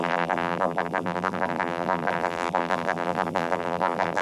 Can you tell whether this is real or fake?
fake